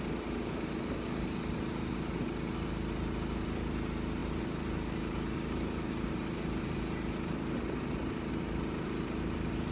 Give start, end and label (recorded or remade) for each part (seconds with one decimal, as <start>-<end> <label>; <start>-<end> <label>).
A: 0.0-9.7 recorded